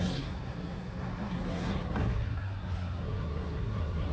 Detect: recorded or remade remade